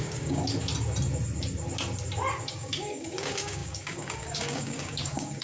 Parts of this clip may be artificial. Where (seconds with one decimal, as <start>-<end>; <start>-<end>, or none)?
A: 0.0-0.4; 2.5-5.4